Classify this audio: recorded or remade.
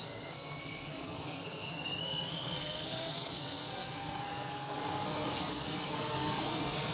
remade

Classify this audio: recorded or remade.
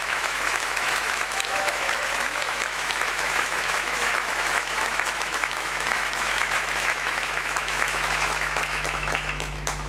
remade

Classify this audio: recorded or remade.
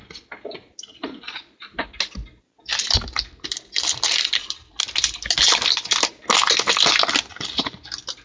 recorded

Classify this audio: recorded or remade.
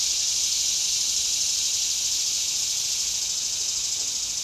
recorded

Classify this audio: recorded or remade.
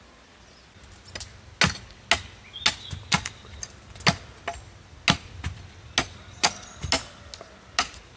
recorded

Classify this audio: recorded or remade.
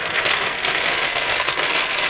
remade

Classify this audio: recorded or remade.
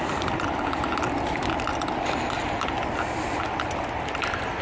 recorded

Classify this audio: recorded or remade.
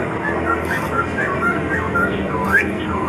remade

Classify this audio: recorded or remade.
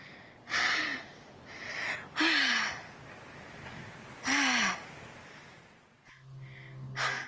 recorded